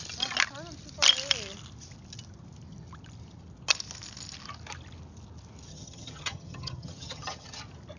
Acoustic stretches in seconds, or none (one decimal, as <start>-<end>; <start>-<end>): 0.0-5.7; 7.6-8.0